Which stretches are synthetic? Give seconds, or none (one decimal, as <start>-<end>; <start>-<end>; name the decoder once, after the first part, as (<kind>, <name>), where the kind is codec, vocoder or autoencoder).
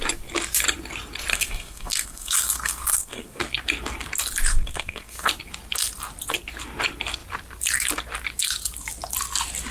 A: 1.3-3.4 (codec, SNAC); 4.5-5.3